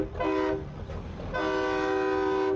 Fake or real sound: real